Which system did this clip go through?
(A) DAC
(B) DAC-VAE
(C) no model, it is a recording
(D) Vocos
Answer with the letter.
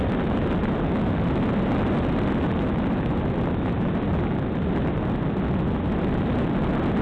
C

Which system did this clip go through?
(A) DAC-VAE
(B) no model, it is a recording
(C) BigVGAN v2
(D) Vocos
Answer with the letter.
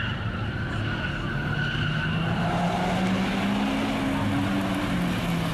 B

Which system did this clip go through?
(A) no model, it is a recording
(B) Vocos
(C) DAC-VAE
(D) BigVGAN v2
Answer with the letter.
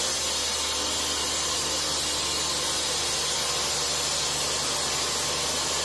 A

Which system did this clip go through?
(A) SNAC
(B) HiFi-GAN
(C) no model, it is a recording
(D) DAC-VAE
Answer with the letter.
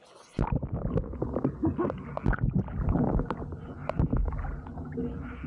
C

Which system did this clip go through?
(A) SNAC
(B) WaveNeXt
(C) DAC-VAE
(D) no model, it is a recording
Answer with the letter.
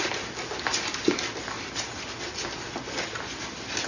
D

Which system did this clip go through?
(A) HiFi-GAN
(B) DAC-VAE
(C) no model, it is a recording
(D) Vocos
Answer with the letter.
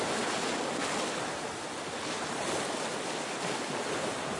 C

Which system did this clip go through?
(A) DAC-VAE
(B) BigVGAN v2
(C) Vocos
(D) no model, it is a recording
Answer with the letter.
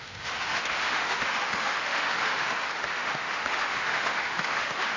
A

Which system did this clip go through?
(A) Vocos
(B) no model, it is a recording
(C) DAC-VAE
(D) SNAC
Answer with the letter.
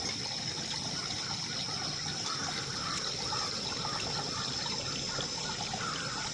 B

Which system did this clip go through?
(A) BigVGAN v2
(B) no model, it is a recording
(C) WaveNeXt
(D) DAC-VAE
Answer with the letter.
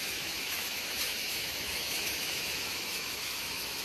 D